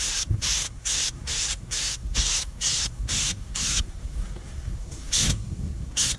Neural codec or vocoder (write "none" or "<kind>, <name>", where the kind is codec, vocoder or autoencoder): codec, SNAC